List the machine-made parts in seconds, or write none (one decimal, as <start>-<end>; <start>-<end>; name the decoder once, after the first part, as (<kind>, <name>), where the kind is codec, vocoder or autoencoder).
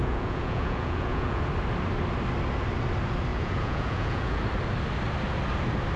0.0-1.4 (vocoder, Vocos); 3.3-4.4